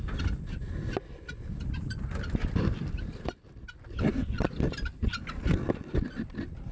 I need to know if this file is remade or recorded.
recorded